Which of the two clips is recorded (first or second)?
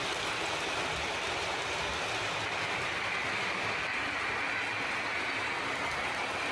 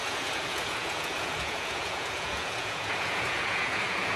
first